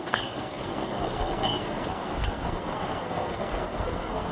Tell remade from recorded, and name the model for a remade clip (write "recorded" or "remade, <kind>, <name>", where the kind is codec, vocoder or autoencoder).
remade, codec, SNAC